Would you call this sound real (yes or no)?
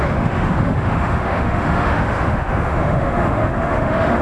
no